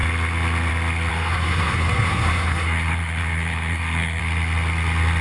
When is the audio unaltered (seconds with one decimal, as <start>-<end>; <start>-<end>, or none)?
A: 0.0-1.1; 4.2-5.2